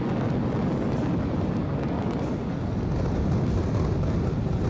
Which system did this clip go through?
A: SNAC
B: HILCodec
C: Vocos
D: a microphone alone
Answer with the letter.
D